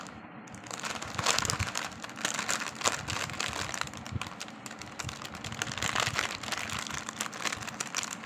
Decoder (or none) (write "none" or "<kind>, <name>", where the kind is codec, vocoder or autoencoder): none